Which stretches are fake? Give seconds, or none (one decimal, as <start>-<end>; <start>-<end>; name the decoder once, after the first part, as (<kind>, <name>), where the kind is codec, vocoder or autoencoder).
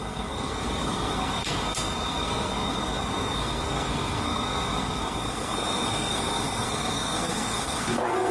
0.0-8.3 (codec, SNAC)